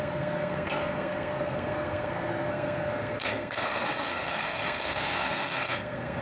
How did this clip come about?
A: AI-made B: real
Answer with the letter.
A